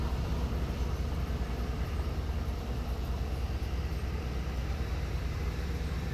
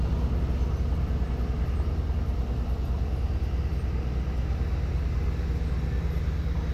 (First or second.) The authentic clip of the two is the second